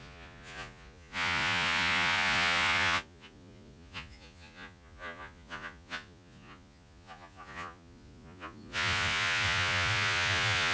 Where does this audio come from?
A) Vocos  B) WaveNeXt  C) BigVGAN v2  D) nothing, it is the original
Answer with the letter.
A